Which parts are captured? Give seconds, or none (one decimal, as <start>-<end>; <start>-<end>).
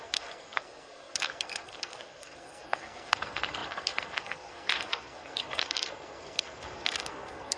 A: none